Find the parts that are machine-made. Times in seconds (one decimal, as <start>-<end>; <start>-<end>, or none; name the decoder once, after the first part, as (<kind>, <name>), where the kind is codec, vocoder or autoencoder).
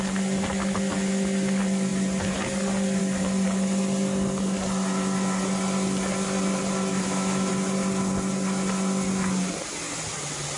6.9-7.5 (autoencoder, DAC-VAE)